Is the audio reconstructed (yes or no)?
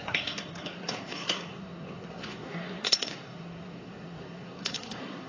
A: yes